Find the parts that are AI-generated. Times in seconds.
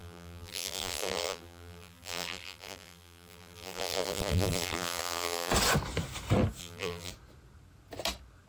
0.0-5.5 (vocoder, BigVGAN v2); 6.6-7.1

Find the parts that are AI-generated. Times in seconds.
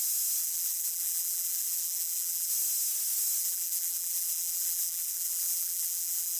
0.4-2.5 (vocoder, BigVGAN v2); 3.4-6.4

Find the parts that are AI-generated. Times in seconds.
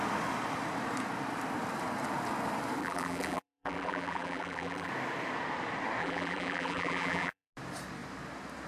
2.8-4.9 (vocoder, BigVGAN v2); 6.0-7.5